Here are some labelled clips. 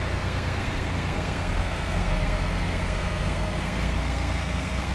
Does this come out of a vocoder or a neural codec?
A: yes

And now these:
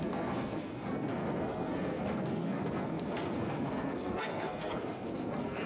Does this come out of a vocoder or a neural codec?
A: yes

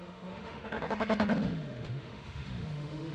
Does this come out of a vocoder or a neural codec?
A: yes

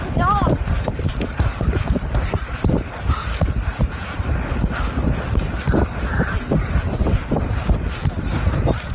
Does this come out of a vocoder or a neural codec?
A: no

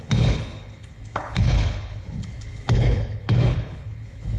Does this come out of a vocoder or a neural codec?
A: yes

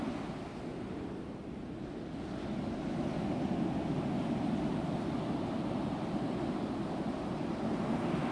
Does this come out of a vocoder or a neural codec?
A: no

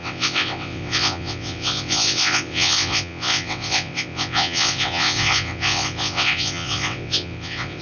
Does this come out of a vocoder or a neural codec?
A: yes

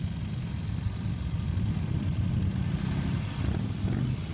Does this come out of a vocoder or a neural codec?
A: no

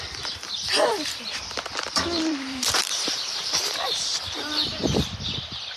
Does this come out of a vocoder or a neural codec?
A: yes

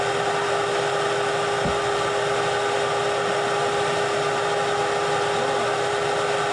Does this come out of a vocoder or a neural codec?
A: no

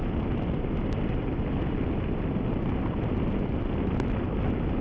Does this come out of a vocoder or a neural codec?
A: no